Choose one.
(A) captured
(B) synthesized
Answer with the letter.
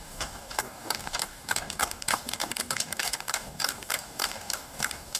B